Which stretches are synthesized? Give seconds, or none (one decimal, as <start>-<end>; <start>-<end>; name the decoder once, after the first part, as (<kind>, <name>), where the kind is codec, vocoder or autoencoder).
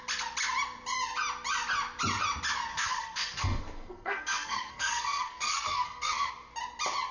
2.7-6.3 (codec, SNAC)